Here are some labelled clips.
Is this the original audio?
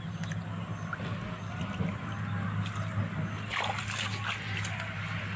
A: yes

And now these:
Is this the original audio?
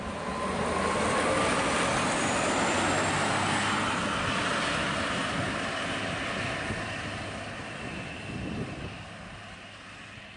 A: yes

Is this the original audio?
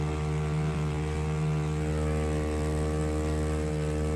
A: yes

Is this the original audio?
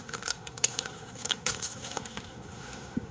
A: no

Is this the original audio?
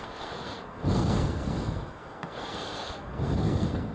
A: no